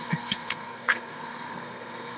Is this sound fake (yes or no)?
yes